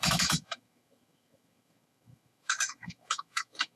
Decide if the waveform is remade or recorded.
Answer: remade